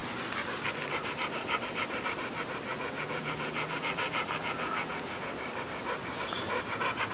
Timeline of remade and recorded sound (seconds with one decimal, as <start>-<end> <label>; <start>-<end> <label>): 0.0-2.7 recorded; 2.7-5.3 remade; 5.3-7.1 recorded